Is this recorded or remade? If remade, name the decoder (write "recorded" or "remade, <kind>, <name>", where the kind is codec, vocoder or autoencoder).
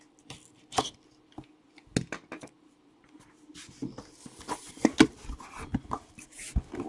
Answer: recorded